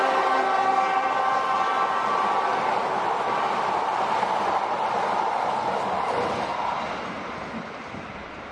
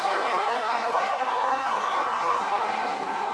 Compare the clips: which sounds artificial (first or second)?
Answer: second